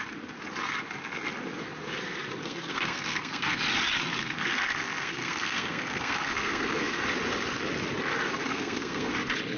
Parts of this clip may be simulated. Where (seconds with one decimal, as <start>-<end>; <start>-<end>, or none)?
2.4-3.6; 4.2-7.0; 8.5-9.1